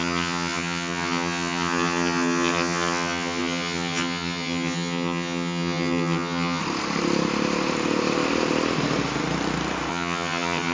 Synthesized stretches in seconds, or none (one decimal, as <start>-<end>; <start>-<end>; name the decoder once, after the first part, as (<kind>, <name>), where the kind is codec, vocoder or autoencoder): 0.0-6.6 (vocoder, HiFi-GAN); 9.9-10.7